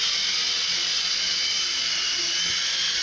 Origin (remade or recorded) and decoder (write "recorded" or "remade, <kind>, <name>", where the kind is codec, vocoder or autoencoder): recorded